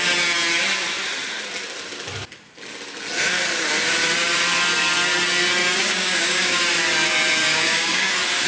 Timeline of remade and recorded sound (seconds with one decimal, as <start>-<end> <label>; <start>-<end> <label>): 0.0-5.6 recorded; 5.6-6.6 remade; 6.6-7.4 recorded; 7.4-8.1 remade; 8.1-8.5 recorded